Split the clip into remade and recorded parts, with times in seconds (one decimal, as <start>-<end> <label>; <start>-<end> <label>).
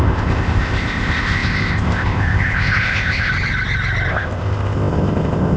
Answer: 0.0-3.3 remade; 3.3-4.1 recorded; 4.1-5.6 remade